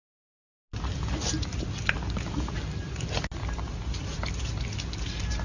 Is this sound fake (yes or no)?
no